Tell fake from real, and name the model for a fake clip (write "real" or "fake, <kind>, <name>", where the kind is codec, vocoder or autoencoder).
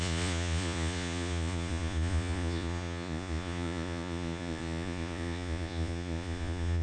fake, vocoder, Vocos